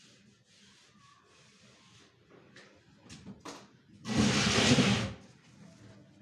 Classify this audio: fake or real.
real